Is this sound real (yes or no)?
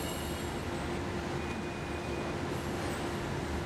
yes